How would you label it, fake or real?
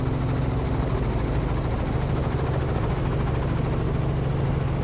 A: real